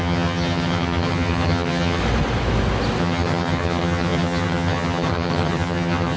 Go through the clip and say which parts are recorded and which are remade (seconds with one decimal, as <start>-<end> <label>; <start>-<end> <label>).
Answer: 0.0-2.0 remade; 2.0-3.0 recorded; 3.0-6.2 remade